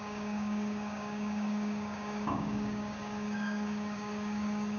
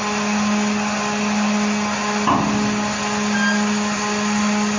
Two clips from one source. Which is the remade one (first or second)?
first